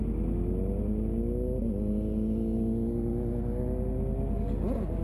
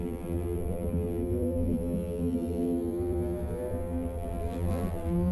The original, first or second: first